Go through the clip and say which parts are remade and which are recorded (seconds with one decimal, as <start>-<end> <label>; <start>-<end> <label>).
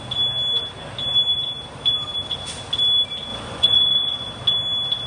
0.0-3.3 recorded; 3.3-4.3 remade; 4.3-5.1 recorded